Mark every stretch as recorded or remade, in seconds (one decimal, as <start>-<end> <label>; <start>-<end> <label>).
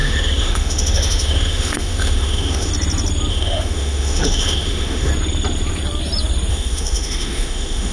0.0-2.7 remade; 2.7-3.3 recorded; 3.3-5.1 remade; 5.1-6.5 recorded; 6.5-7.9 remade